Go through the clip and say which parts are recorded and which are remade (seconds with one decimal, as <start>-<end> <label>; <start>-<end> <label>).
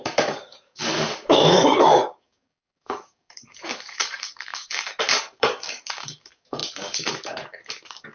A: 0.0-8.1 remade